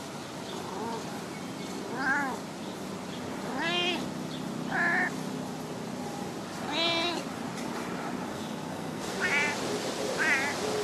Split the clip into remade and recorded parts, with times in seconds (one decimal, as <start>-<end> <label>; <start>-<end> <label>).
0.0-8.3 recorded; 8.3-9.2 remade; 9.2-10.8 recorded